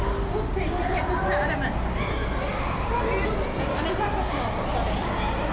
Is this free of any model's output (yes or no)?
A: yes